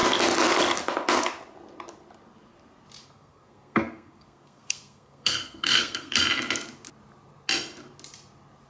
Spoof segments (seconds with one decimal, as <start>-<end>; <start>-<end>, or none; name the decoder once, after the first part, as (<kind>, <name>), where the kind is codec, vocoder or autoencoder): 3.0-6.2 (codec, SNAC)